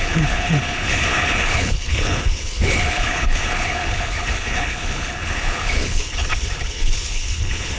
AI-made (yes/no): yes